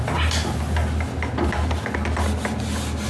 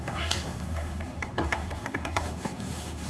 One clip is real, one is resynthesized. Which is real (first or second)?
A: first